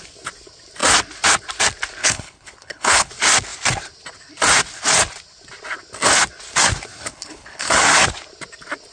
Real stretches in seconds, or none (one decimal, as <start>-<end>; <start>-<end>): 0.0-2.0; 3.1-7.0; 7.7-8.9